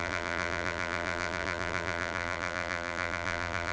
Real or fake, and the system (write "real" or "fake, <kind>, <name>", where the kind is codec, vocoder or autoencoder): fake, vocoder, BigVGAN v2